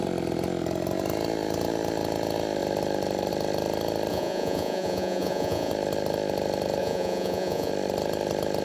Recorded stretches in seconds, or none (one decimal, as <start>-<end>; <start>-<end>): 0.0-4.1; 5.7-6.8; 7.7-8.6

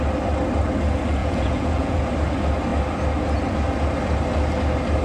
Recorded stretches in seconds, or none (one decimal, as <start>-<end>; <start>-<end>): 0.0-1.2; 2.0-5.0

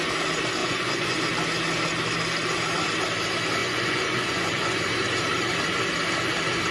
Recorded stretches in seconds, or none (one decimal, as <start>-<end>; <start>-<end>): 0.0-0.6; 1.2-3.6; 4.8-6.7